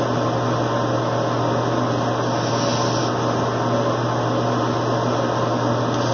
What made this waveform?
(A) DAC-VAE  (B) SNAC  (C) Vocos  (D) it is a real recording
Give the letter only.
D